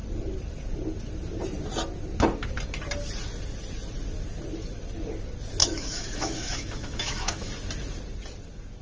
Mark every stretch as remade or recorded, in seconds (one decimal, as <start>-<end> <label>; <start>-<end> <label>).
0.0-5.6 recorded; 5.6-7.5 remade; 7.5-8.8 recorded